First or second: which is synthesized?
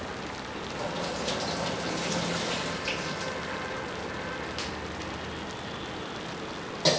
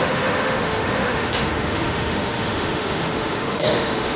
second